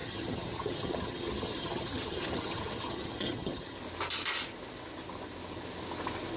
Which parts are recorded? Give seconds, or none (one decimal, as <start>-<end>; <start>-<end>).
3.8-6.4